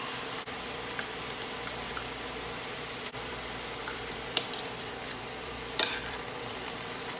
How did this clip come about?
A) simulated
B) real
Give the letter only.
A